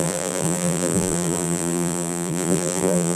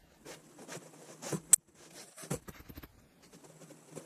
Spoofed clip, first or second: first